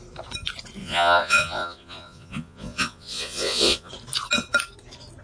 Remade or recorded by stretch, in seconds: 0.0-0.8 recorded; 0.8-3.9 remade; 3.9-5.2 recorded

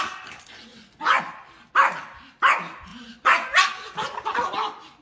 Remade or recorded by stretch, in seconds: 0.0-0.7 recorded; 0.7-1.2 remade; 1.2-2.9 recorded; 2.9-3.6 remade; 3.6-5.0 recorded

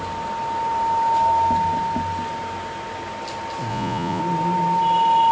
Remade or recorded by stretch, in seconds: 0.0-3.7 recorded; 3.7-4.2 remade; 4.2-5.3 recorded

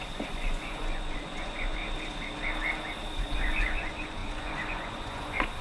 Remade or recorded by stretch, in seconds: 0.0-1.8 remade; 1.8-3.2 recorded; 3.2-5.6 remade

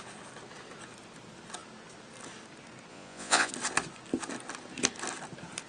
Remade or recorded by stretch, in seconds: 0.0-2.9 recorded; 2.9-3.5 remade; 3.5-5.7 recorded